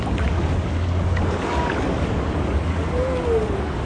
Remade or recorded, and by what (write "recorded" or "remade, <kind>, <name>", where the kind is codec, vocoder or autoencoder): remade, codec, DAC